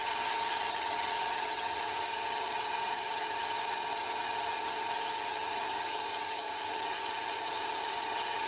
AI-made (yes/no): yes